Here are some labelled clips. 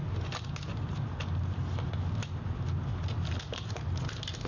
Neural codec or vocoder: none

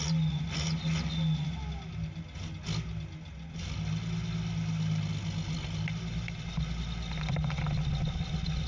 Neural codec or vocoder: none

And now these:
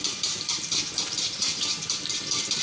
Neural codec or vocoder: vocoder, BigVGAN v2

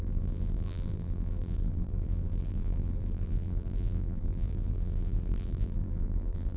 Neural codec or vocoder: vocoder, BigVGAN v2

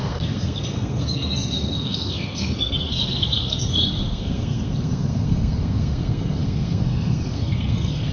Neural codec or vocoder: codec, SNAC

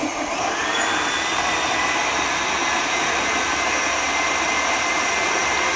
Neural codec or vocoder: vocoder, BigVGAN v2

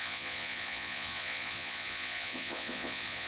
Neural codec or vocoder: vocoder, Vocos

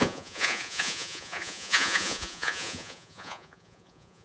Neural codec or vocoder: vocoder, Vocos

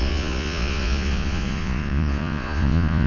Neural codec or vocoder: vocoder, Vocos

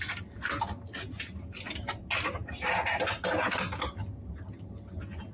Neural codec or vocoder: none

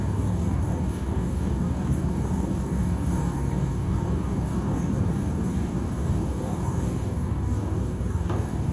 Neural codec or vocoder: codec, DAC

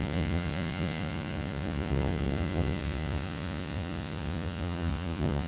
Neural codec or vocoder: vocoder, Vocos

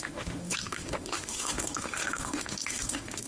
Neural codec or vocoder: autoencoder, DAC-VAE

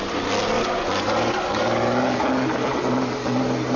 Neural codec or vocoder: none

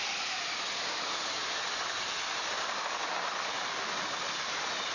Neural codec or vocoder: vocoder, BigVGAN v2